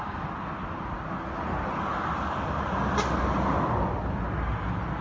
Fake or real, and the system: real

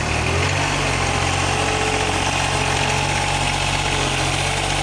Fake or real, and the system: real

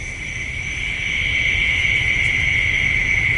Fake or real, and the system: real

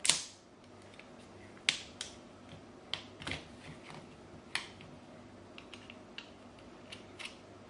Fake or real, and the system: real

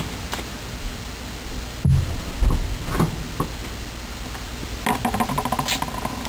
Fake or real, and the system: real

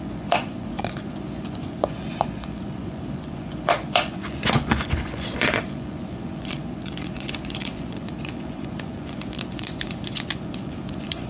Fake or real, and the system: fake, vocoder, Vocos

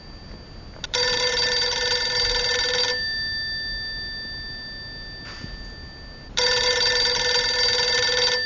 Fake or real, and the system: real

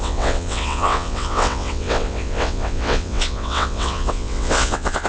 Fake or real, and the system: fake, vocoder, WaveNeXt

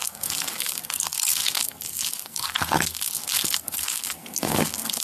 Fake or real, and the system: fake, codec, SNAC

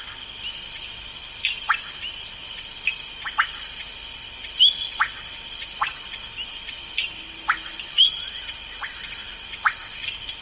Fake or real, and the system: real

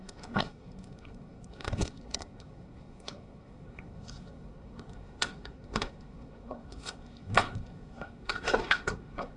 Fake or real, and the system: fake, codec, SNAC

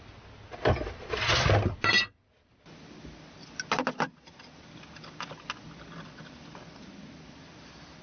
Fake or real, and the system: real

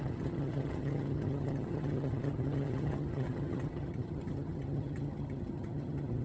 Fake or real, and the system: fake, vocoder, HiFi-GAN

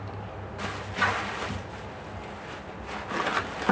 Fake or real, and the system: real